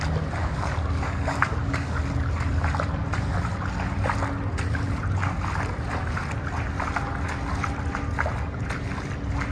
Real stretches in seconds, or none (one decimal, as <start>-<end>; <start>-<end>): 0.0-0.4; 2.0-9.5